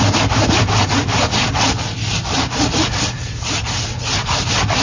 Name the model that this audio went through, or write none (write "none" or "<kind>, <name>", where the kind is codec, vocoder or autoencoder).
vocoder, BigVGAN v2